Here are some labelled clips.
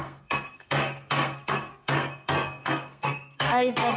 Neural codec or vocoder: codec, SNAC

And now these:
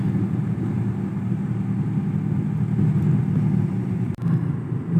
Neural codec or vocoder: none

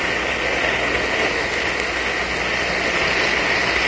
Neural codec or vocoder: none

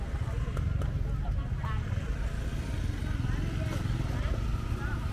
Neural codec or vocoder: none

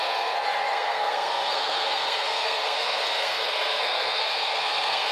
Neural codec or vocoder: codec, SNAC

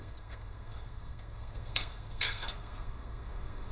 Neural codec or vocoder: codec, SNAC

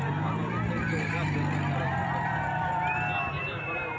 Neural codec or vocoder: none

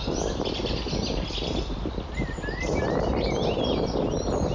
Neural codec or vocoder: none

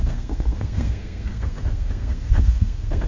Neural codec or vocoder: codec, SNAC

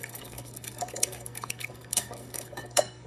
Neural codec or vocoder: codec, SNAC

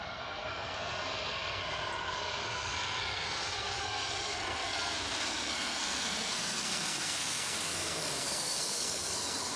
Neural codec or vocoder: codec, SNAC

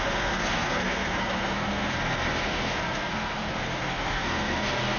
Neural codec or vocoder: codec, SNAC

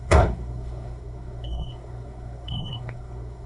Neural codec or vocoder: codec, SNAC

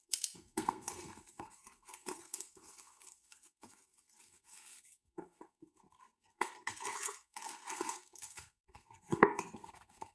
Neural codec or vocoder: codec, SNAC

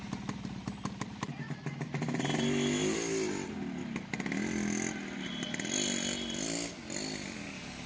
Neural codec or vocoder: none